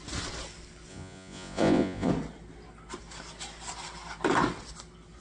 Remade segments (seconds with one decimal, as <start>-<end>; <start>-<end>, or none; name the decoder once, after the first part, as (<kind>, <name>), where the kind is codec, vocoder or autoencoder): 0.9-2.1 (vocoder, Vocos)